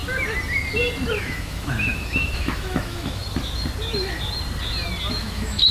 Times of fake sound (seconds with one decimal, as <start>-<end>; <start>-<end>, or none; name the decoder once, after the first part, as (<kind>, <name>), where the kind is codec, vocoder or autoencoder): 1.2-3.2 (autoencoder, DAC-VAE); 5.1-5.7